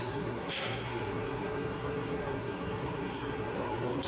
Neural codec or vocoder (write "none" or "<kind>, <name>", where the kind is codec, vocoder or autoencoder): codec, SNAC